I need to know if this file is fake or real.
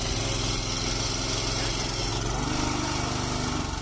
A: real